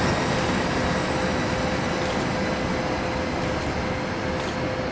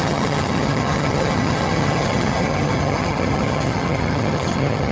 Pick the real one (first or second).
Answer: first